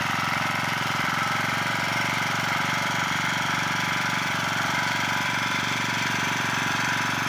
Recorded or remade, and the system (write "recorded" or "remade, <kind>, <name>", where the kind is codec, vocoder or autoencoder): remade, vocoder, BigVGAN v2